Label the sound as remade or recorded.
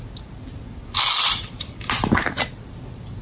recorded